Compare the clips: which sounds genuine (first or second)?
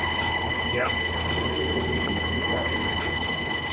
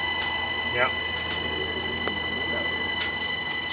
second